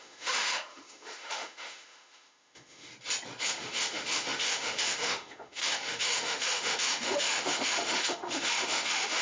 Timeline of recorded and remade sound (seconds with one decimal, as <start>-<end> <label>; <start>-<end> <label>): 0.0-2.9 remade; 2.9-3.4 recorded; 3.4-9.2 remade